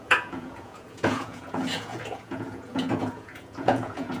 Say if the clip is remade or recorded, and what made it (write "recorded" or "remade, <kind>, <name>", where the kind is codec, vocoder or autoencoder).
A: remade, vocoder, Vocos